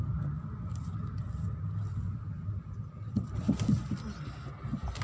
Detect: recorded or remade recorded